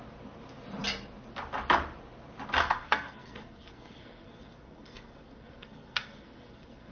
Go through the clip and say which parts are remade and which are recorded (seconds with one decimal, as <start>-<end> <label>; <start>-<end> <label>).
0.0-2.6 recorded; 2.6-6.9 remade